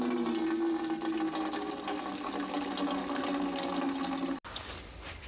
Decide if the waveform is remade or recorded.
recorded